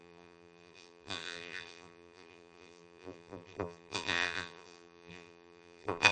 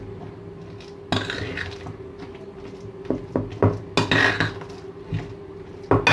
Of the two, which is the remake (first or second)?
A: first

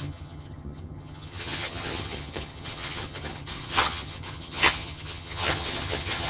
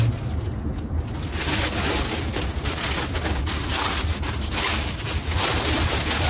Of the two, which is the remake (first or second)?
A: first